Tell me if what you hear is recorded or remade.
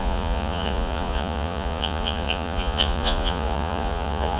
remade